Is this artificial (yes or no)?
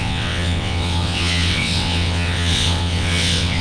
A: yes